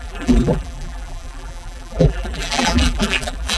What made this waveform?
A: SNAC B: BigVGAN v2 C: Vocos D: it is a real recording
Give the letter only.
B